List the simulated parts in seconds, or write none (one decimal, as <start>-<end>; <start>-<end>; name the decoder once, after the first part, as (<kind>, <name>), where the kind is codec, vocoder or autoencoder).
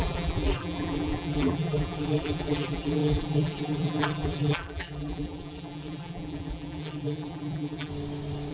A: 0.0-7.9 (vocoder, BigVGAN v2)